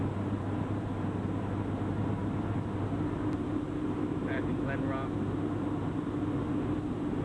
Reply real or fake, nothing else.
real